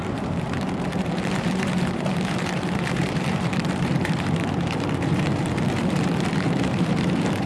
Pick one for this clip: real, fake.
fake